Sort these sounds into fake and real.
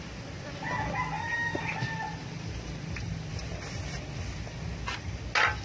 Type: real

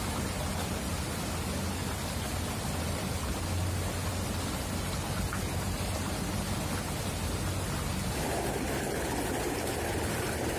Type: real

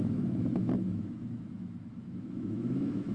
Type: fake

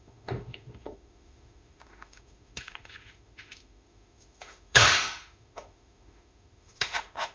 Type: fake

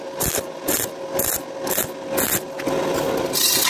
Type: real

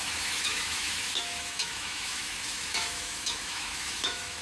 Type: fake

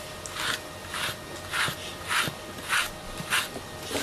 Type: real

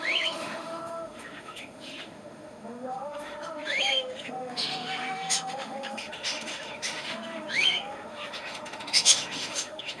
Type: fake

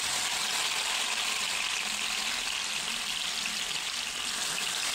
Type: real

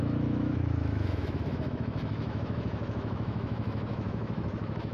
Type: fake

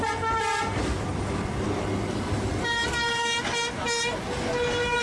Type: real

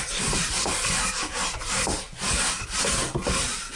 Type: real